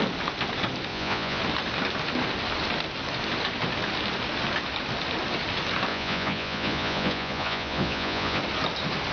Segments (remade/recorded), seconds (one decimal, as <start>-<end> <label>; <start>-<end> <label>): 0.0-0.9 recorded; 0.9-1.4 remade; 1.4-5.9 recorded; 5.9-8.4 remade; 8.4-9.1 recorded